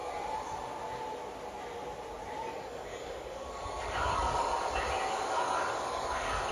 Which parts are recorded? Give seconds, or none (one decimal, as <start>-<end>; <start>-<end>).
0.0-2.5; 4.5-5.1